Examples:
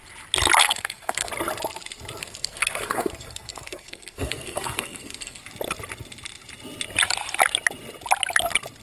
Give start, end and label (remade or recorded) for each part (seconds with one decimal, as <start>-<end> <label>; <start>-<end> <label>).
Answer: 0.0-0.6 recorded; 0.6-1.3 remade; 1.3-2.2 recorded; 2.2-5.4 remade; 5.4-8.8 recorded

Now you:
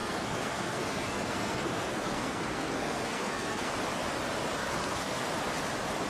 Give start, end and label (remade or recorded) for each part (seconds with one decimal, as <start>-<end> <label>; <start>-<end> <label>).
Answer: 0.0-3.7 remade; 3.7-4.6 recorded; 4.6-5.3 remade; 5.3-6.1 recorded

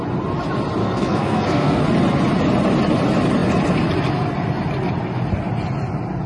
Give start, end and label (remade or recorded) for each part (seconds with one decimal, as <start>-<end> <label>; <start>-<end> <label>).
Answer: 0.0-0.8 recorded; 0.8-1.8 remade; 1.8-6.3 recorded

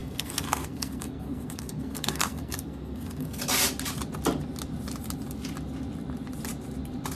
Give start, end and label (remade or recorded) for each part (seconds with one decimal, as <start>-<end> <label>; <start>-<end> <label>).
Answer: 0.0-3.4 remade; 3.4-7.1 recorded

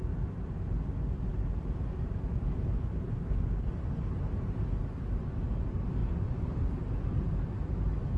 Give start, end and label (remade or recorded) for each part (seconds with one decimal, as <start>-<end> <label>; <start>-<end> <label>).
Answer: 0.0-8.2 recorded

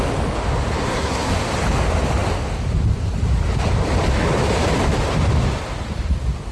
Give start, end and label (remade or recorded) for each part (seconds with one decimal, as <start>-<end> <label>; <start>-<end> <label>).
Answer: 0.0-0.8 recorded; 0.8-1.3 remade; 1.3-6.5 recorded

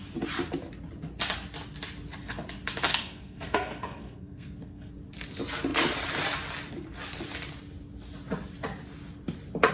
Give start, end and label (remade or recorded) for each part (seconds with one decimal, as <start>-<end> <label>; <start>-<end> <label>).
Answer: 0.0-2.9 recorded; 2.9-4.9 remade; 4.9-9.7 recorded

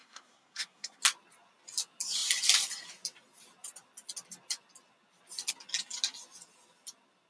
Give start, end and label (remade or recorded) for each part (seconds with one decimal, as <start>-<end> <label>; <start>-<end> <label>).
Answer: 0.0-1.0 remade; 1.0-7.3 recorded